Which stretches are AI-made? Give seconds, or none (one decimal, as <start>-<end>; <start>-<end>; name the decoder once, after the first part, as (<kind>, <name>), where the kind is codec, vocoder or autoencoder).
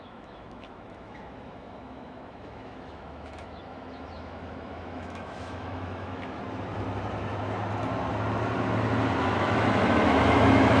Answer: 0.0-6.4 (autoencoder, DAC-VAE); 9.2-10.8